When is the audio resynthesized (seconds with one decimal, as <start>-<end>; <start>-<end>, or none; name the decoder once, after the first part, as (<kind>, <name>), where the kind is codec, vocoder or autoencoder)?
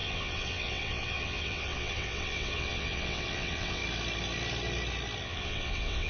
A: 0.0-3.8 (vocoder, WaveNeXt); 5.2-6.1